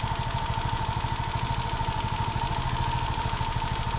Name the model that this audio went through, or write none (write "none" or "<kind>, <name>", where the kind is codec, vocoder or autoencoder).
none